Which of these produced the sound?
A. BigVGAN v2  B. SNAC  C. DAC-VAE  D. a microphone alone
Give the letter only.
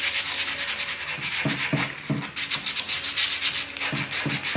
D